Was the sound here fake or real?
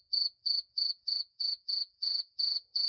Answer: fake